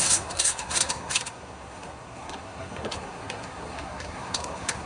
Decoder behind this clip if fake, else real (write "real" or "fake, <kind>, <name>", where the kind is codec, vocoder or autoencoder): fake, codec, SNAC